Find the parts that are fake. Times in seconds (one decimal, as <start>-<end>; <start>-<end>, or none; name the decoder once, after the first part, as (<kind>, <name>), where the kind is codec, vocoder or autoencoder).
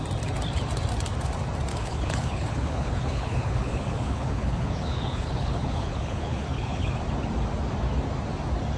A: 1.7-7.0 (codec, HILCodec)